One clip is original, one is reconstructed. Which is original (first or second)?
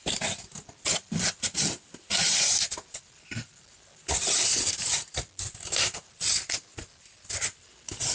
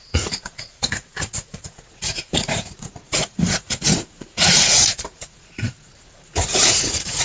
first